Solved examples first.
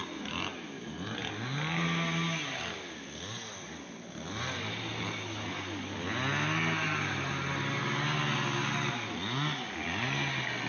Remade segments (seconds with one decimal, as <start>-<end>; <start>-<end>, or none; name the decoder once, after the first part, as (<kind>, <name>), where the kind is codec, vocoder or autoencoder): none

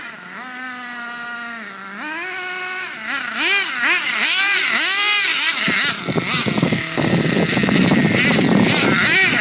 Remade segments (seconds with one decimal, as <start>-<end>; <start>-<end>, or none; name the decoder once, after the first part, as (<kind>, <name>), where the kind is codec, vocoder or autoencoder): none

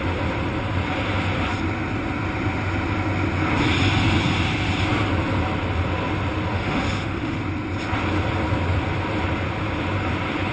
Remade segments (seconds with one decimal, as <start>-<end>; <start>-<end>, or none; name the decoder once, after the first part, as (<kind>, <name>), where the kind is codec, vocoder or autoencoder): 6.5-7.4 (autoencoder, DAC-VAE)

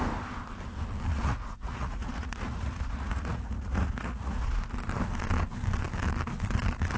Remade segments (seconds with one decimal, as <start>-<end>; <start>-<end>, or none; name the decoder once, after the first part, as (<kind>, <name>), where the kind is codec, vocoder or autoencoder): 1.1-4.6 (vocoder, Vocos)

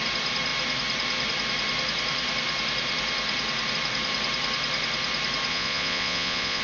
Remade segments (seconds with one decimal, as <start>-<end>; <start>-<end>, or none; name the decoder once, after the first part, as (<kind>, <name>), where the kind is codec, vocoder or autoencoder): 5.5-6.6 (vocoder, Vocos)

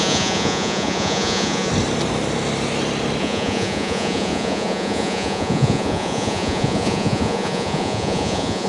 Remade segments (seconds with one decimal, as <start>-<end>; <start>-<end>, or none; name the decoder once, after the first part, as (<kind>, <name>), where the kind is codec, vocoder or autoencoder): 0.0-1.7 (vocoder, Vocos); 3.2-8.7

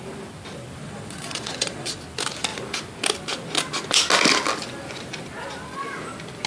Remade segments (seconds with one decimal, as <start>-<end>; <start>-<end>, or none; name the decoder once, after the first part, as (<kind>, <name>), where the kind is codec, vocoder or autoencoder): 0.8-2.0 (vocoder, Vocos)